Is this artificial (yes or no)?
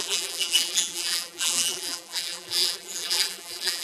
yes